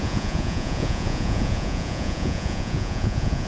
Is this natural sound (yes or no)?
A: no